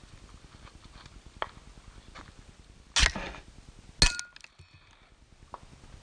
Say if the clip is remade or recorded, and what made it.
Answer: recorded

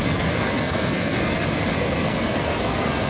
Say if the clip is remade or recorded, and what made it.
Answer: remade, codec, SNAC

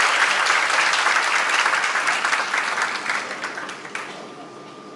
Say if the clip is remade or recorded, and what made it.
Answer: recorded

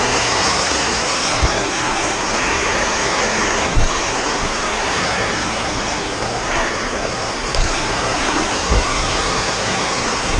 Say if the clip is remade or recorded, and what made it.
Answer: remade, codec, SNAC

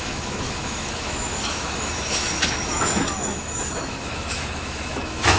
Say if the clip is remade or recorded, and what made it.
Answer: remade, autoencoder, DAC-VAE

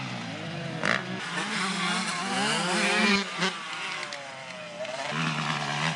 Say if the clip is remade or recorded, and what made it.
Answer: recorded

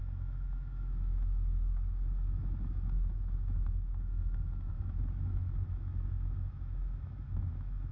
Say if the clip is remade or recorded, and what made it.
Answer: remade, autoencoder, DAC-VAE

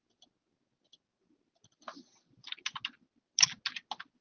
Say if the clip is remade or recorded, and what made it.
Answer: recorded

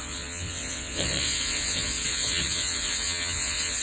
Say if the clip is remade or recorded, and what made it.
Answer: remade, vocoder, WaveNeXt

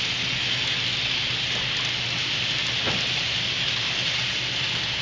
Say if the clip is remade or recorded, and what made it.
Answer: recorded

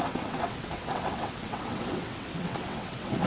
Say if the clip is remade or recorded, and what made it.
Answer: remade, vocoder, WaveNeXt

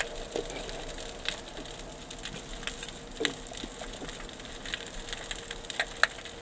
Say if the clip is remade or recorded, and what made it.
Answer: recorded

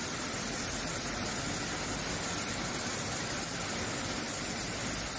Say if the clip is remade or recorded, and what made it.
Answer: recorded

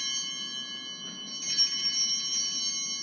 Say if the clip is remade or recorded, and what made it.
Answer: recorded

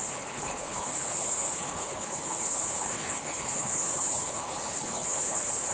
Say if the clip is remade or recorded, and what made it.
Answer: remade, codec, HILCodec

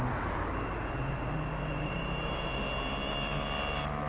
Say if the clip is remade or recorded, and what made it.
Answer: recorded